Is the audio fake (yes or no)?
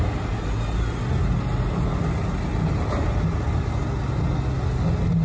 no